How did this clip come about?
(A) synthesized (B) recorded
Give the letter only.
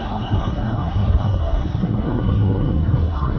A